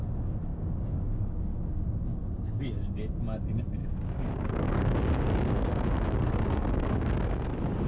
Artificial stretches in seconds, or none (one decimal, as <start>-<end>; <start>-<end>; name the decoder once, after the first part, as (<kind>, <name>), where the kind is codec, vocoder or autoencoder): 0.5-3.0 (codec, DAC); 3.8-7.4